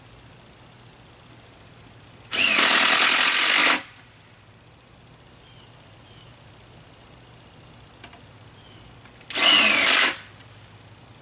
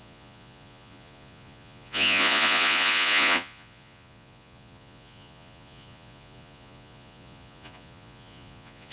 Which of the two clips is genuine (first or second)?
first